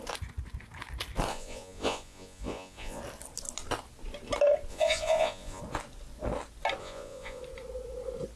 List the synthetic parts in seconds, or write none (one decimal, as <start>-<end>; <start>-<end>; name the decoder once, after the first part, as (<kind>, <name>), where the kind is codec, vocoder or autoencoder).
1.3-3.0 (vocoder, Vocos); 4.7-5.6; 6.8-7.4